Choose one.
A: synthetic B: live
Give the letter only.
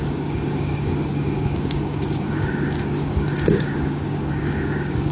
A